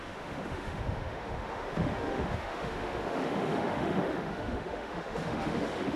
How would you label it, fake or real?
fake